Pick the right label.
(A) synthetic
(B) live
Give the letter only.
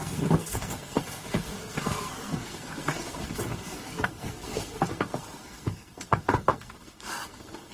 A